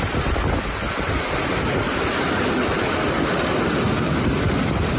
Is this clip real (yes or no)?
yes